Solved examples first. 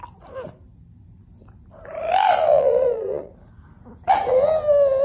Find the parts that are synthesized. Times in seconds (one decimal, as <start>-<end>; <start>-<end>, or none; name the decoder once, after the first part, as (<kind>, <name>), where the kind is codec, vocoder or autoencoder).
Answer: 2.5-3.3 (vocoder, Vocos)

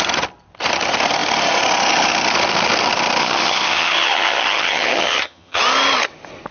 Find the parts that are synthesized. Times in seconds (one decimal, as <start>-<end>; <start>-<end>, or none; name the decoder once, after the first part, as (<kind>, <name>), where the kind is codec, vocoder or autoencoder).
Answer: 3.2-5.6 (vocoder, HiFi-GAN)

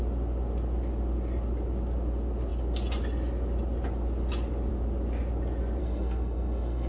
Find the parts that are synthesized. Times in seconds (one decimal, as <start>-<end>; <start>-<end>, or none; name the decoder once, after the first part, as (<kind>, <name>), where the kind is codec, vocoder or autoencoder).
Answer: 5.8-6.9 (codec, SNAC)